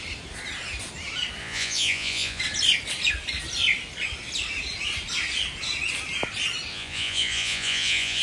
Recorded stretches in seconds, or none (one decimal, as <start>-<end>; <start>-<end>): 0.0-1.4; 2.4-6.7